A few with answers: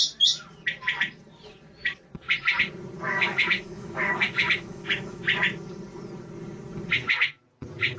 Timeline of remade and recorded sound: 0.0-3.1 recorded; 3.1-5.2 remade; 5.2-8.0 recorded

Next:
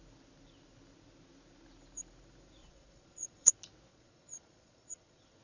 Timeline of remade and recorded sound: 0.0-2.6 recorded; 2.6-3.5 remade; 3.5-3.9 recorded; 3.9-5.4 remade

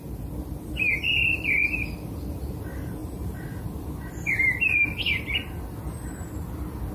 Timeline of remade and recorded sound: 0.0-3.0 recorded; 3.0-5.6 remade; 5.6-6.9 recorded

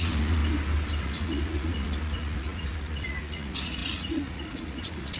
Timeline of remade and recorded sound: 0.0-0.4 remade; 0.4-1.0 recorded; 1.0-5.2 remade